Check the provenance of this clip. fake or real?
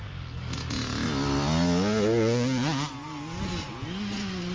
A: real